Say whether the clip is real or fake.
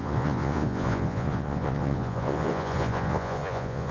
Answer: fake